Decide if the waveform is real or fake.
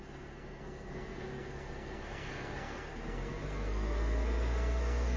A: fake